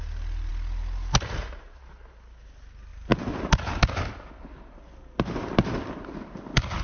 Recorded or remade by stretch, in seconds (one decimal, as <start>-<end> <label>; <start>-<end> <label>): 0.0-6.8 recorded